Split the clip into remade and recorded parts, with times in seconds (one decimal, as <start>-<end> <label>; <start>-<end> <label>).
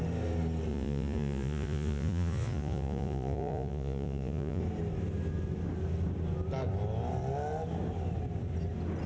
0.0-0.7 recorded; 0.7-4.6 remade; 4.6-9.1 recorded